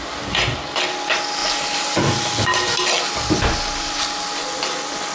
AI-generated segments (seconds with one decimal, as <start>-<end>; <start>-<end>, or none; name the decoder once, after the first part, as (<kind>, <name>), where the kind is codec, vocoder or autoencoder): 1.4-2.1 (vocoder, BigVGAN v2)

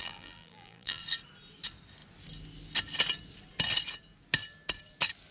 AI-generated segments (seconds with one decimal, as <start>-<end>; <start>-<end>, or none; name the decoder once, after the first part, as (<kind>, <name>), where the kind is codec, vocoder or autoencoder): 0.0-1.0 (vocoder, BigVGAN v2)

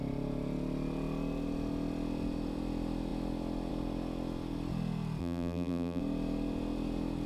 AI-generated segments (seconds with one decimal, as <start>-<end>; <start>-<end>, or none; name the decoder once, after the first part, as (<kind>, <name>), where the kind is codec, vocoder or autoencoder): 5.2-6.0 (vocoder, BigVGAN v2)

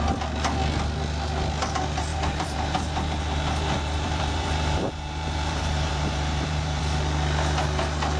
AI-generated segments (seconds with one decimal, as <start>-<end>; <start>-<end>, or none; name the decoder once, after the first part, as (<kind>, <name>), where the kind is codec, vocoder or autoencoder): 2.1-6.8 (vocoder, BigVGAN v2)

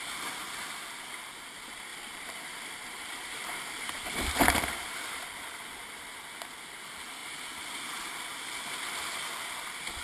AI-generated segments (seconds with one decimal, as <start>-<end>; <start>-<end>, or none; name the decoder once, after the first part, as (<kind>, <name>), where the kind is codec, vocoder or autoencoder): 1.9-6.2 (vocoder, BigVGAN v2)

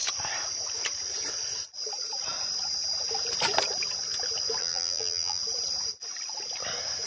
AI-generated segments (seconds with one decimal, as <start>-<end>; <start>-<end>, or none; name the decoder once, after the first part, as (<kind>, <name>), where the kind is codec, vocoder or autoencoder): 4.6-5.4 (vocoder, BigVGAN v2)

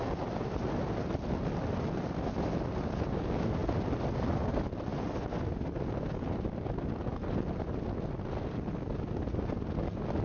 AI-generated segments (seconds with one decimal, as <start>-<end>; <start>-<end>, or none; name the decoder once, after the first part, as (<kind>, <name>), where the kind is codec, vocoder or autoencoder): 4.9-5.9 (vocoder, BigVGAN v2)